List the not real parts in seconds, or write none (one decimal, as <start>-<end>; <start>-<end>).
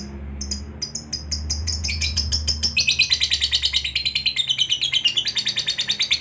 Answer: 1.6-2.3